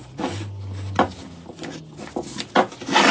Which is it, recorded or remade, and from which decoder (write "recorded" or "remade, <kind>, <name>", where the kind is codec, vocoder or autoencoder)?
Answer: recorded